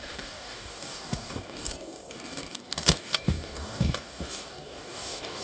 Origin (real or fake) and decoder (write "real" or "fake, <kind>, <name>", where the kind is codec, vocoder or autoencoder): fake, codec, DAC